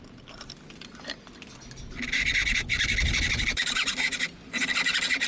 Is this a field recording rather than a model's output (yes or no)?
yes